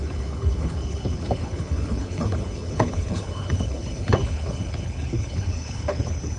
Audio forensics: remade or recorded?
remade